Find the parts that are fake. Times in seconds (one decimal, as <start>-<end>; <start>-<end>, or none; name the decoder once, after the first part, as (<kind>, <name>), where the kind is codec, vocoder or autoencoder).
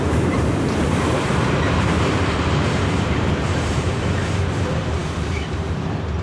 0.0-6.2 (vocoder, BigVGAN v2)